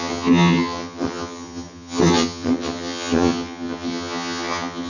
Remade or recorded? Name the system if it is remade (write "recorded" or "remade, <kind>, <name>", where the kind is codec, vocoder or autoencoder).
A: remade, vocoder, HiFi-GAN